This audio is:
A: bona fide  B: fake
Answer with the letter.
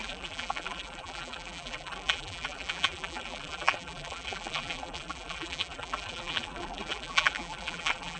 B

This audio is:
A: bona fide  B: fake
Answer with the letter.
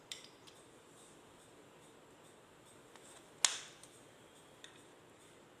A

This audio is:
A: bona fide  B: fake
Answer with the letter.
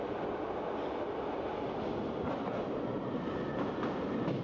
A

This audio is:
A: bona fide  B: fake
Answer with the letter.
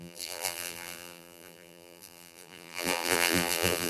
B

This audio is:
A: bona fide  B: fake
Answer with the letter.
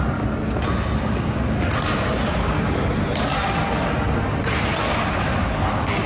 A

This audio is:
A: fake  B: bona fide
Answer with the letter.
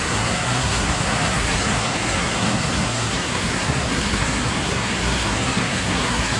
A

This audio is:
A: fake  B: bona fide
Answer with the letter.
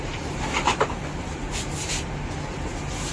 B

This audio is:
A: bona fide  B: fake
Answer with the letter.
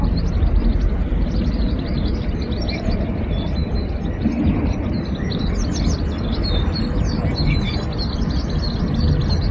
A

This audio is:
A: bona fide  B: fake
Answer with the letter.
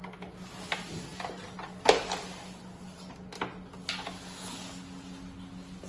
A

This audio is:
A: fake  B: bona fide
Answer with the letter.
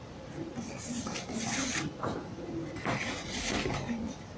B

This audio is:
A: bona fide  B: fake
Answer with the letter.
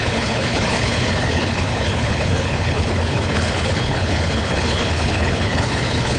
B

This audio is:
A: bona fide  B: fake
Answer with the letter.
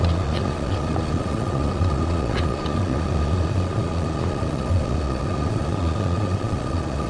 B